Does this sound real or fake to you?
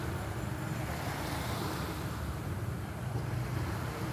real